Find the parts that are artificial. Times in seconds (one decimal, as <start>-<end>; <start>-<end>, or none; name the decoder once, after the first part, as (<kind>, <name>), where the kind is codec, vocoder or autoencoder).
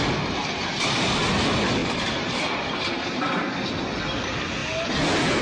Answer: 1.8-3.2 (vocoder, BigVGAN v2)